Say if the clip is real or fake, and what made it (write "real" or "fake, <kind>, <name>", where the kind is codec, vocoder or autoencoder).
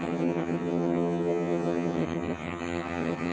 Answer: fake, vocoder, HiFi-GAN